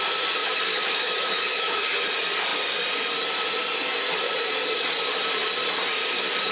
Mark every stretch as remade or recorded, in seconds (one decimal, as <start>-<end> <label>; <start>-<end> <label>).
0.0-0.4 recorded; 0.4-2.0 remade; 2.0-6.5 recorded